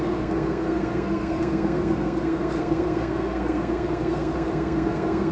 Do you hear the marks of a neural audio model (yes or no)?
yes